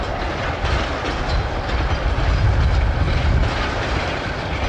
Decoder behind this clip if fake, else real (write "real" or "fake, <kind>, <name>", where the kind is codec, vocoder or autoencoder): real